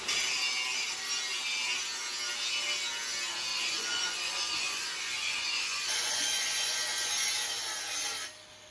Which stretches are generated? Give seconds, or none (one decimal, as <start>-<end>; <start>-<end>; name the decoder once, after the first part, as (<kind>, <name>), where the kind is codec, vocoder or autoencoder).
3.5-7.1 (vocoder, Vocos)